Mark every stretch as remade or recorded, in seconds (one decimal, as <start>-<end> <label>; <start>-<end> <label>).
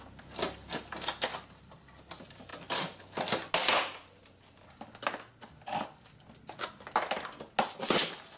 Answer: 0.0-8.4 recorded